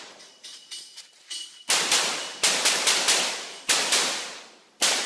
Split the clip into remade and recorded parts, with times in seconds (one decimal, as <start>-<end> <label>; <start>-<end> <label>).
0.0-5.1 recorded